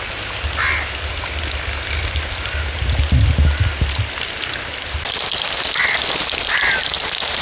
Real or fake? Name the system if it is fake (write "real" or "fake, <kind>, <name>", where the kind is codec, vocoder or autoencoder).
real